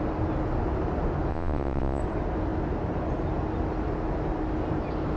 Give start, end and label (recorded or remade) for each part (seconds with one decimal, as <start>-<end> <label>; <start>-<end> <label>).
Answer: 0.0-1.3 recorded; 1.3-2.0 remade; 2.0-5.2 recorded